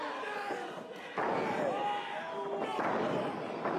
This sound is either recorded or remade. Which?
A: recorded